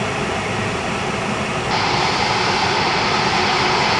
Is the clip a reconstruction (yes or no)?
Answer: no